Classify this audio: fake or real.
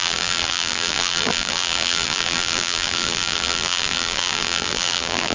fake